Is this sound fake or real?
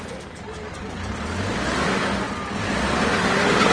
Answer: fake